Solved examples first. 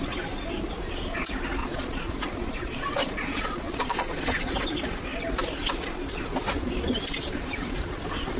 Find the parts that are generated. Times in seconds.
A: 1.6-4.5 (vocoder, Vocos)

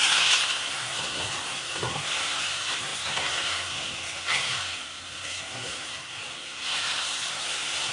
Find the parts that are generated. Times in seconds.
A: 0.0-7.9 (codec, SNAC)

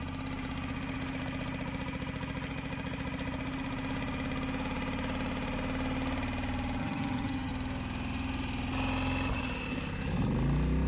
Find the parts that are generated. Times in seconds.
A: 6.8-7.5 (vocoder, HiFi-GAN)